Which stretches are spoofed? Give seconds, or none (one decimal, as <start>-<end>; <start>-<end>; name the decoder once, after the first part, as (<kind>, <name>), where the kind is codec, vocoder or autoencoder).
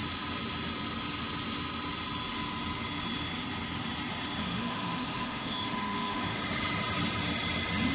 4.4-6.4 (autoencoder, DAC-VAE)